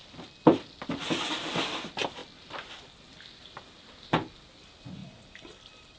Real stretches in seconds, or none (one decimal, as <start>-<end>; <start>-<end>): 0.0-5.0